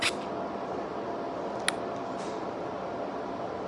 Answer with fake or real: real